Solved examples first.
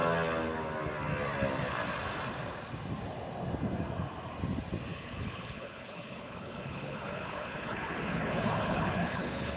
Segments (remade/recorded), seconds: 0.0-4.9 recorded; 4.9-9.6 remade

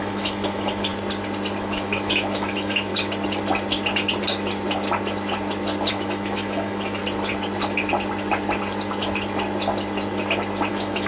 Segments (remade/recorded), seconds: 0.0-0.9 remade; 0.9-1.6 recorded; 1.6-2.9 remade; 2.9-5.9 recorded; 5.9-7.0 remade; 7.0-10.7 recorded; 10.7-11.1 remade

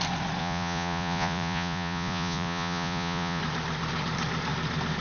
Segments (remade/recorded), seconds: 0.0-0.4 recorded; 0.4-3.4 remade; 3.4-5.0 recorded

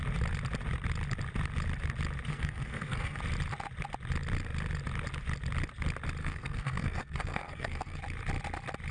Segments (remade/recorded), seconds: 0.0-2.3 recorded; 2.3-3.2 remade; 3.2-6.2 recorded; 6.2-8.0 remade; 8.0-8.9 recorded

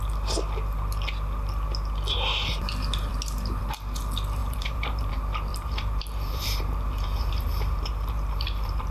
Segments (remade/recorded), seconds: 0.0-4.4 recorded; 4.4-5.1 remade; 5.1-5.5 recorded; 5.5-8.9 remade

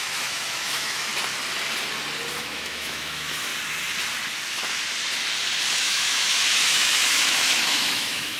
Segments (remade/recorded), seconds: 0.0-1.1 remade; 1.1-2.3 recorded; 2.3-3.5 remade; 3.5-5.8 recorded; 5.8-8.4 remade

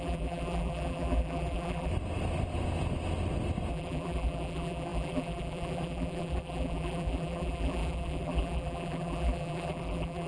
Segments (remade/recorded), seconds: 0.0-1.9 remade; 1.9-3.7 recorded; 3.7-10.3 remade